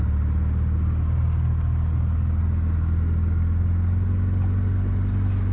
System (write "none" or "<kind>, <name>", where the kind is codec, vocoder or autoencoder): none